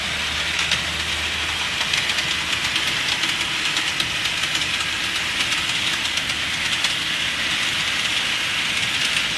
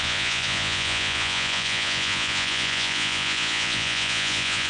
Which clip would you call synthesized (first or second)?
second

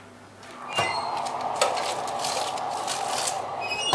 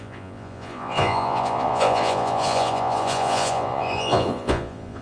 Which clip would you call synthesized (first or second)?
second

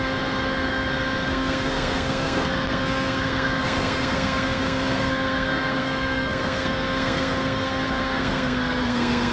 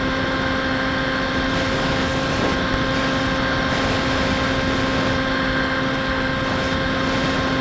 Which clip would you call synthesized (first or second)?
first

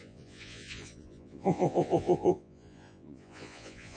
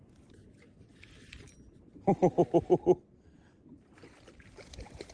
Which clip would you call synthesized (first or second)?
first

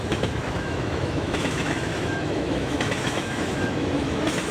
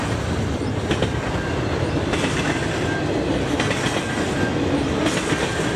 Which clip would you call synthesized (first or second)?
first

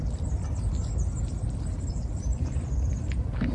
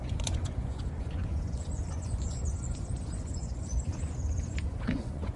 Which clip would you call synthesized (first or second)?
second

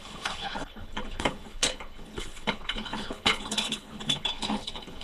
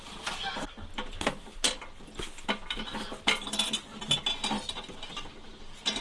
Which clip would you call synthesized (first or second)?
first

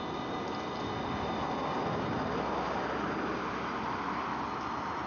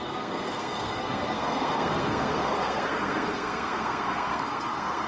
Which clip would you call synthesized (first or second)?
second